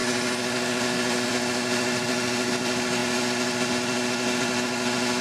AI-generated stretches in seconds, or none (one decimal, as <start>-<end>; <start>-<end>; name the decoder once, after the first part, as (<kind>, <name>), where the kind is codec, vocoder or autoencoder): none